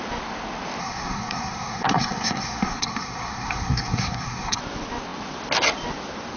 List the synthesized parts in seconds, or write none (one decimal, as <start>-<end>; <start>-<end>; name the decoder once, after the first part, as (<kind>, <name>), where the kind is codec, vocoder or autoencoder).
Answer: 0.8-4.6 (codec, SNAC)